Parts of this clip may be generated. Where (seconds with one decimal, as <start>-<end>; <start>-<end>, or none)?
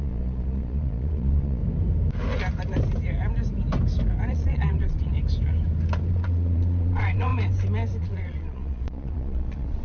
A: 0.0-1.6; 4.3-5.1; 6.1-7.3; 8.0-9.8